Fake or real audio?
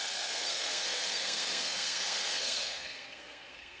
fake